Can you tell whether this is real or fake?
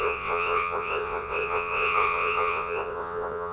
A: fake